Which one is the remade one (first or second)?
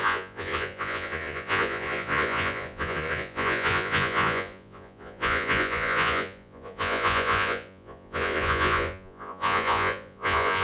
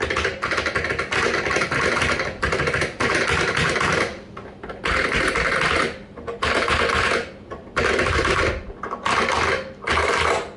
first